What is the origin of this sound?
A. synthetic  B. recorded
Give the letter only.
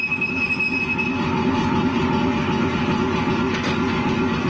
B